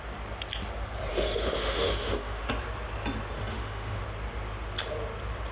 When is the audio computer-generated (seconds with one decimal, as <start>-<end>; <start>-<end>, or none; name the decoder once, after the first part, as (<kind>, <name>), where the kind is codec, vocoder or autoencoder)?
1.1-2.5 (autoencoder, DAC-VAE); 3.5-4.0